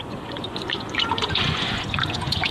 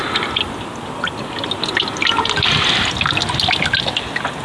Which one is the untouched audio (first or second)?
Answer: second